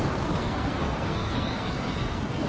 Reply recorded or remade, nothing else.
remade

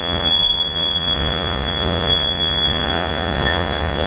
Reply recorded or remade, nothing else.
remade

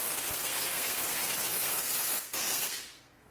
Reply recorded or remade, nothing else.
remade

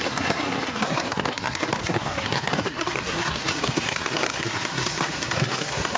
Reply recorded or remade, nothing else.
remade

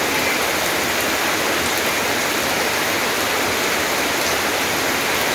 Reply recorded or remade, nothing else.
recorded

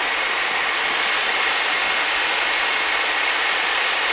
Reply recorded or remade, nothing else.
recorded